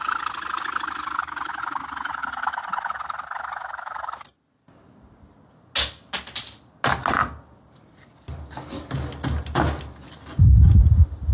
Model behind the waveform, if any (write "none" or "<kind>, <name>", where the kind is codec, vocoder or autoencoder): none